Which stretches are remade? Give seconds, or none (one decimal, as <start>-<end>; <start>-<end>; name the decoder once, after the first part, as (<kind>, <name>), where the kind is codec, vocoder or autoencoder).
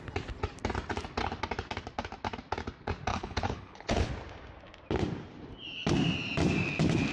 3.1-4.1 (codec, HILCodec)